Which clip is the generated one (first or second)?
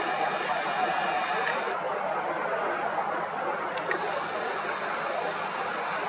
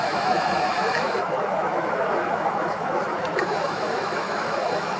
second